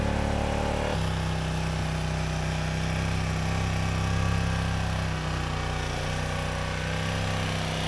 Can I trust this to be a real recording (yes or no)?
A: yes